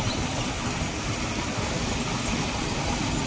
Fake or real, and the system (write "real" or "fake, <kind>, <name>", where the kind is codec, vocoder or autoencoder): real